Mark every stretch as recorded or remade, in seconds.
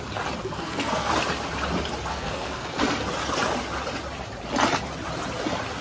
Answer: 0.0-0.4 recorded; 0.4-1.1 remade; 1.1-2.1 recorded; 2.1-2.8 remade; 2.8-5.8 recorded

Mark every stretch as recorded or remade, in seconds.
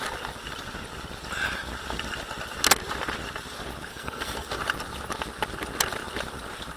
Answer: 0.0-3.9 recorded; 3.9-4.6 remade; 4.6-6.8 recorded